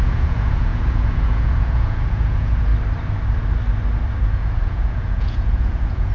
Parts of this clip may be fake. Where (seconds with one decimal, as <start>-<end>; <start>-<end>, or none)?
0.0-2.7; 4.3-6.1